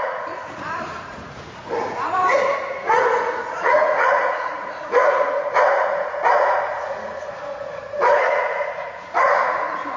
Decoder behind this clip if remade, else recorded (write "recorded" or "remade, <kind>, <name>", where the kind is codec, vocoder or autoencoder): remade, vocoder, Vocos